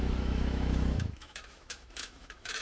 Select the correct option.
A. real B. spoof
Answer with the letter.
B